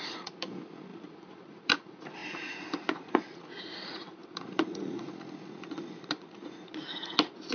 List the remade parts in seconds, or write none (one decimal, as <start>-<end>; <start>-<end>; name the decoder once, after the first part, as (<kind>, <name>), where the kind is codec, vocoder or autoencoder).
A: 0.0-7.5 (vocoder, Vocos)